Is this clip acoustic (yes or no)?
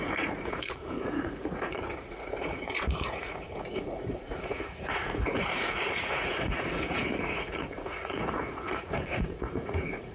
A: no